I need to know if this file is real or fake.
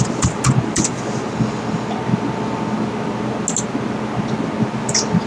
real